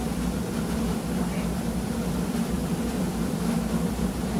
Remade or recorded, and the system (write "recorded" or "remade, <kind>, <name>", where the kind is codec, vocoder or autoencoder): remade, vocoder, BigVGAN v2